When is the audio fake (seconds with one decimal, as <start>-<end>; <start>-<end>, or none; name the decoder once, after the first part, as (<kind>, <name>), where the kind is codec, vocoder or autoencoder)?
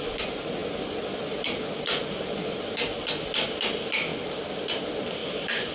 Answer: none